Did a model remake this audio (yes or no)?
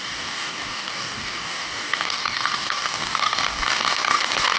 yes